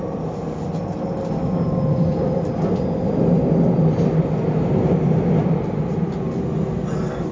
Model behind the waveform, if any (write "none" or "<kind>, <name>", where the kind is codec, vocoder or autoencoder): none